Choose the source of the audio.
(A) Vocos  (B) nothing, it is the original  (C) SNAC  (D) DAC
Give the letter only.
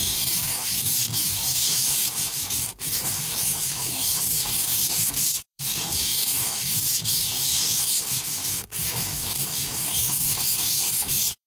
D